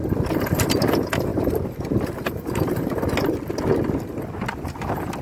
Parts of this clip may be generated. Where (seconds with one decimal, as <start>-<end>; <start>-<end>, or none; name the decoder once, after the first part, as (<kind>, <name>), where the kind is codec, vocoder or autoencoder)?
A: 1.3-3.0 (vocoder, BigVGAN v2)